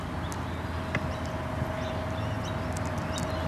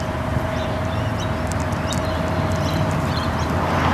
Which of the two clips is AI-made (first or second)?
second